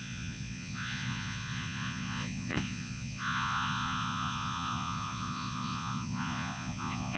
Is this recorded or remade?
remade